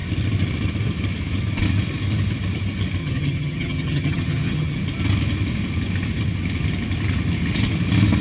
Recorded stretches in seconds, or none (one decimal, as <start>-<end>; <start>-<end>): 0.0-3.0; 4.8-8.2